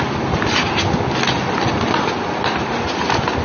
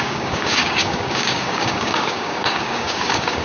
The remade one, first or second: second